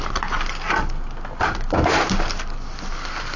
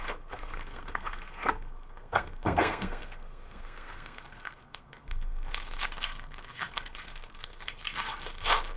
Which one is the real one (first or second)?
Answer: first